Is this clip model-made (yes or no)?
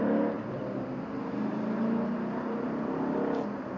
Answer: no